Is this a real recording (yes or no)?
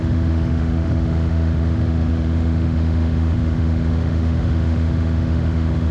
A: no